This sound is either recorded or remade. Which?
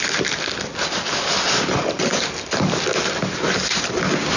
recorded